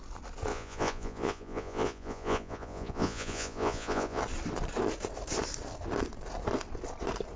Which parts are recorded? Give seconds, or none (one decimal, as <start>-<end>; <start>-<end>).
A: 0.0-0.5; 4.2-7.4